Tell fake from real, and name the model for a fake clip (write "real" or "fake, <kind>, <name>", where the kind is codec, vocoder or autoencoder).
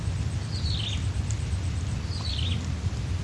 real